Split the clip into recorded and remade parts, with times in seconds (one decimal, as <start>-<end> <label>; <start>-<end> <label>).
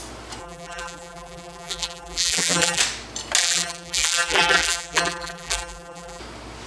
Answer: 0.0-0.4 recorded; 0.4-2.8 remade; 2.8-3.4 recorded; 3.4-6.2 remade; 6.2-6.7 recorded